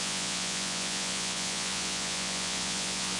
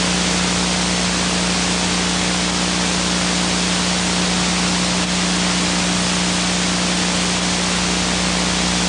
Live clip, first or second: second